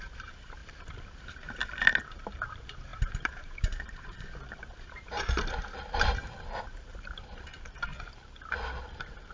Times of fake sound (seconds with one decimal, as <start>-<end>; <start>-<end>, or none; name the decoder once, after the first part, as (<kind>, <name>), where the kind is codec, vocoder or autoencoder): 0.0-0.6 (vocoder, BigVGAN v2); 1.1-1.6; 2.5-7.9; 8.8-9.3